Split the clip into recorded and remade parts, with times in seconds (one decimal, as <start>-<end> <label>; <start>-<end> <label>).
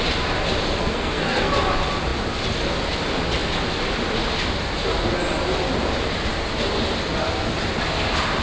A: 0.0-0.8 recorded; 0.8-1.5 remade; 1.5-8.4 recorded